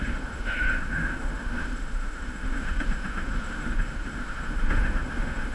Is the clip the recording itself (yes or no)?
no